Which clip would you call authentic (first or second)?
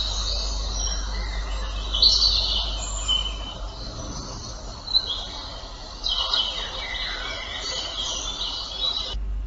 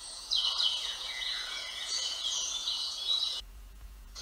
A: first